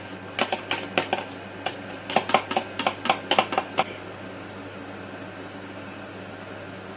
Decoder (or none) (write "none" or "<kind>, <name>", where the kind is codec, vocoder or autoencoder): none